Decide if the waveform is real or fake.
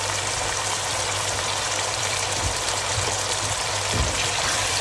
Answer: fake